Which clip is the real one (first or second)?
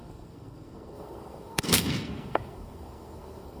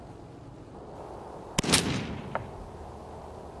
second